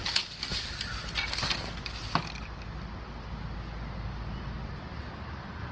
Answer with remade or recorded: recorded